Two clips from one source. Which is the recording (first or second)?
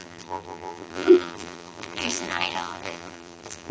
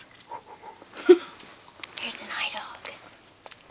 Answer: second